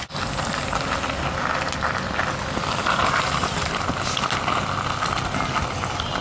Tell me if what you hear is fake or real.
real